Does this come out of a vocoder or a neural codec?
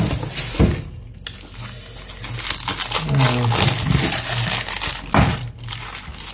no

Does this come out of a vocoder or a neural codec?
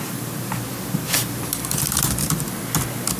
no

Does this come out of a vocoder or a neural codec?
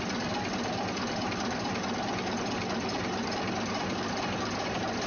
no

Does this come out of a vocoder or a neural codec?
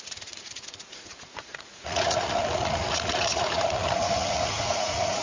yes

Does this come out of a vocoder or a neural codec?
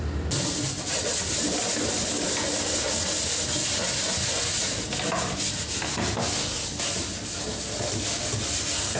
no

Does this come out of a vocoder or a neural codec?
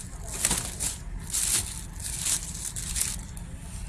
no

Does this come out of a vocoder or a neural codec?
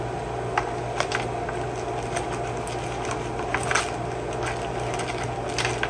no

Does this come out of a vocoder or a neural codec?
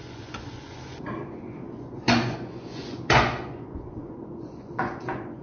yes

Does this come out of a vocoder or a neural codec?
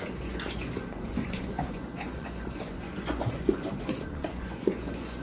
yes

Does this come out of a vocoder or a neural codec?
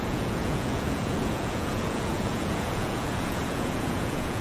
yes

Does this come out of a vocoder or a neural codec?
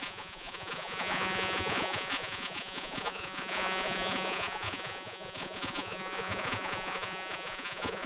yes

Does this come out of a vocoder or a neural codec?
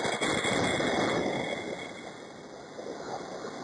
no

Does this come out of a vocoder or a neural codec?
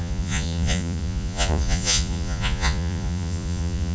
yes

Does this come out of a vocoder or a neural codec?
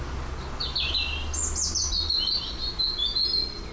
no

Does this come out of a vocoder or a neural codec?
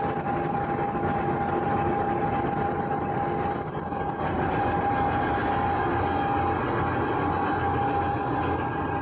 no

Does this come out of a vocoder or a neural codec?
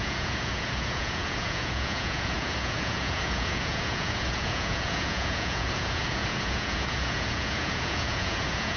yes